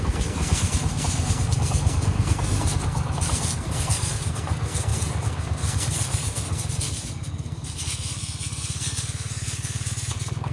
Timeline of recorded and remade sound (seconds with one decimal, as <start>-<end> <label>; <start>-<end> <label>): 0.0-10.5 remade